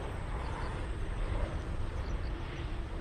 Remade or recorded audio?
remade